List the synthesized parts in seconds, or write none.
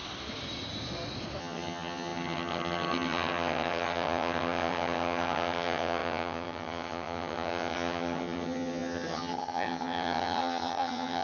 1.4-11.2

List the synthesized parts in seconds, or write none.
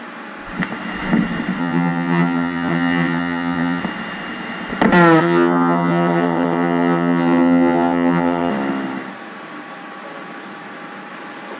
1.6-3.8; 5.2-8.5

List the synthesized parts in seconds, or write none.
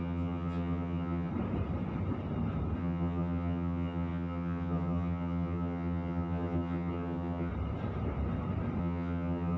0.0-1.3; 2.8-7.5; 8.8-9.6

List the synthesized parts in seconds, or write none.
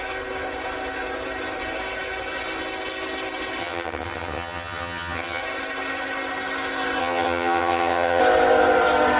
3.6-5.4; 7.0-8.2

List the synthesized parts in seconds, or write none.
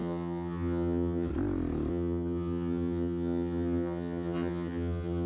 0.0-1.3; 1.9-5.3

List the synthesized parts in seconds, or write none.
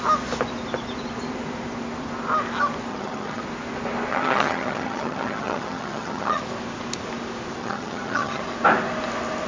2.9-3.4; 4.1-6.4; 7.6-8.4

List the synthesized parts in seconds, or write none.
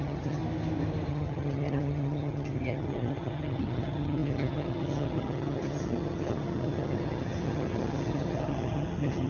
0.0-0.4; 1.1-9.3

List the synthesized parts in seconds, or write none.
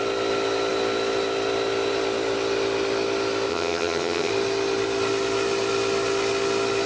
3.5-4.3